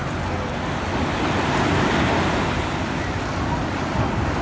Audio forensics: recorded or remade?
recorded